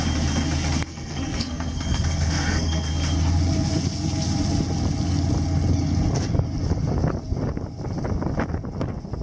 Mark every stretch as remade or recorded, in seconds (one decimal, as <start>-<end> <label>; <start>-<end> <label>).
0.0-0.9 recorded; 0.9-2.9 remade; 2.9-9.2 recorded